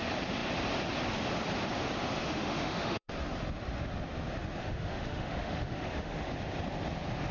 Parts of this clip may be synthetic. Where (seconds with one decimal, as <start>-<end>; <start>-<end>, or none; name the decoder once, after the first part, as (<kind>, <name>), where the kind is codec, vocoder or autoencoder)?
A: 2.2-3.1 (autoencoder, DAC-VAE); 4.6-6.3